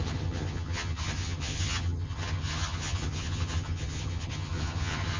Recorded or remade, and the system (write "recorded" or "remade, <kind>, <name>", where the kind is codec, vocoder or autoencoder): remade, vocoder, HiFi-GAN